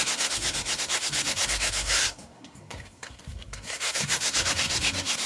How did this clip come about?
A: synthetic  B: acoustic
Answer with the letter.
A